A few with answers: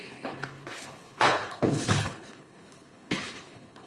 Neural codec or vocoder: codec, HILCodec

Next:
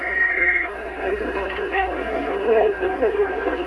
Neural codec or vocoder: codec, SNAC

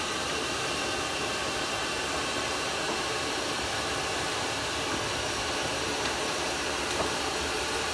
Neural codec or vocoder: vocoder, BigVGAN v2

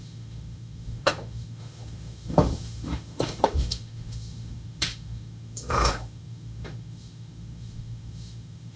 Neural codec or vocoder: autoencoder, DAC-VAE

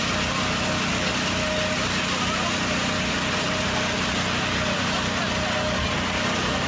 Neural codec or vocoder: none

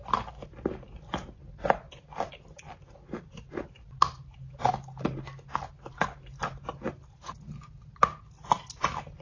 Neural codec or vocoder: none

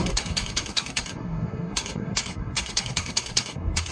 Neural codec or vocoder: codec, SNAC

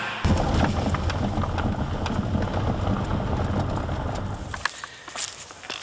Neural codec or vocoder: none